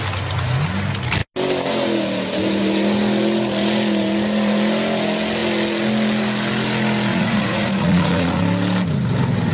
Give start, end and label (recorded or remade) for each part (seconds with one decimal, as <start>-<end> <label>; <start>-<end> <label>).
0.0-7.1 recorded; 7.1-8.4 remade; 8.4-9.5 recorded